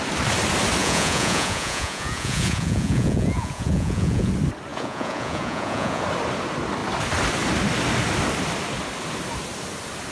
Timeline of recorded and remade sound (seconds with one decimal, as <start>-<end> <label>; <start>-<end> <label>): 0.0-0.8 recorded; 0.8-4.3 remade; 4.3-4.7 recorded; 4.7-6.0 remade; 6.0-10.1 recorded